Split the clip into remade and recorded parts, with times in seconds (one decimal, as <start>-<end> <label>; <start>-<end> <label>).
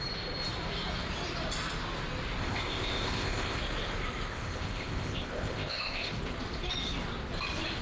0.0-2.4 recorded; 2.4-3.6 remade; 3.6-4.3 recorded; 4.3-6.2 remade; 6.2-7.8 recorded